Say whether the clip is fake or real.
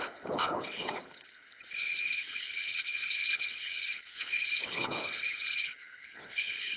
fake